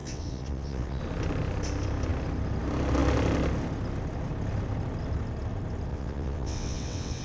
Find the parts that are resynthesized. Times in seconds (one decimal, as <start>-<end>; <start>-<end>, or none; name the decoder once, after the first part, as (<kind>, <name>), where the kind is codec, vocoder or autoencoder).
0.0-1.0 (vocoder, WaveNeXt); 5.9-7.2

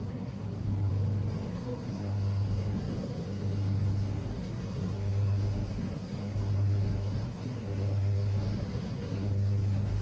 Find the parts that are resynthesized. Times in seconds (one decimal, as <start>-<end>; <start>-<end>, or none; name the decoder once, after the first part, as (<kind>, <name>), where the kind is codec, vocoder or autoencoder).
0.0-0.9 (codec, SNAC); 1.5-10.0

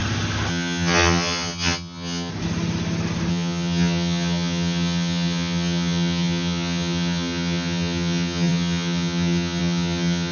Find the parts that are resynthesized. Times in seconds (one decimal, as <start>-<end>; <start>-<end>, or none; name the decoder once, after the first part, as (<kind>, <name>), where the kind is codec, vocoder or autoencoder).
0.5-2.3 (vocoder, HiFi-GAN); 3.3-10.3